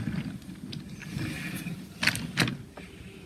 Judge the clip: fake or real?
real